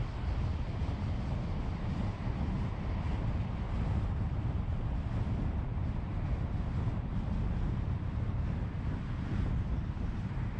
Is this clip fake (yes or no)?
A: no